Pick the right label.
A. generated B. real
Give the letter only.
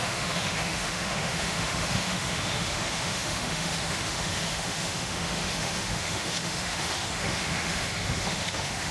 A